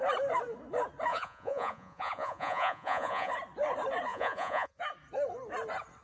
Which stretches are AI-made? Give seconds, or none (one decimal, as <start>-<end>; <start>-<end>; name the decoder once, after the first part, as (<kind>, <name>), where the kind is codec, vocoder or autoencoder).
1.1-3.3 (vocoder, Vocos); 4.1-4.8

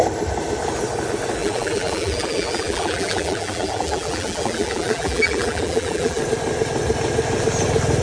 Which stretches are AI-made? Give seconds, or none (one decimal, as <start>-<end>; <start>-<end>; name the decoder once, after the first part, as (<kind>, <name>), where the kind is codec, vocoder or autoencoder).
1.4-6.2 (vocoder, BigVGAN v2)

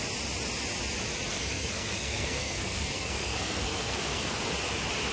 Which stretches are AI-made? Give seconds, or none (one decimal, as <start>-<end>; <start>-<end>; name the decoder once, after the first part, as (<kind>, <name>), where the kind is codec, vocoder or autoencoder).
1.3-4.4 (codec, SNAC)

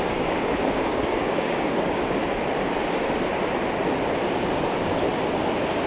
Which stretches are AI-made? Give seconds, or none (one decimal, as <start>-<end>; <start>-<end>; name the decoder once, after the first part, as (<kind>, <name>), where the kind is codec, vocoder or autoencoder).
0.0-2.2 (codec, DAC)

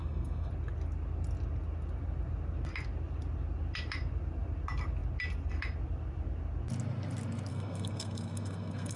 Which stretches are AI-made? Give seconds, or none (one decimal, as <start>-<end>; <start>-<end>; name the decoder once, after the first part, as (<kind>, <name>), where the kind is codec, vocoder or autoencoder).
0.0-0.5 (codec, SNAC); 7.5-9.0

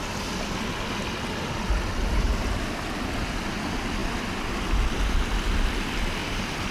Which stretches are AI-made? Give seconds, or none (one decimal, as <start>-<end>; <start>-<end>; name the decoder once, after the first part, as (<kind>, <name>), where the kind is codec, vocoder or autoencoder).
2.1-2.6 (vocoder, BigVGAN v2); 6.2-6.7

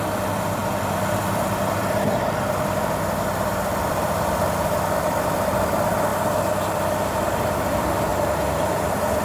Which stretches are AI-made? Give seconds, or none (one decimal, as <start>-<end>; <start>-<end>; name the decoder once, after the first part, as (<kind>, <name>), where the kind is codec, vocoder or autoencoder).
0.0-0.6 (vocoder, BigVGAN v2); 3.9-8.1; 8.7-9.2